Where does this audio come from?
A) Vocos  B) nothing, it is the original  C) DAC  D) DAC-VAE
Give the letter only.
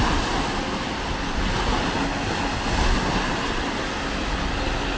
B